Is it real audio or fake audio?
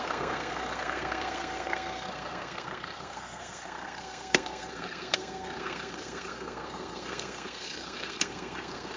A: fake